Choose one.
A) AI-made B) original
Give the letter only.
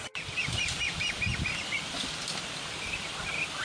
B